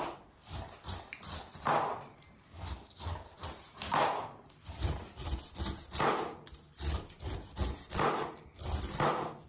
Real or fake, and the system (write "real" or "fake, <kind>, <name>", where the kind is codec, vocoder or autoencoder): real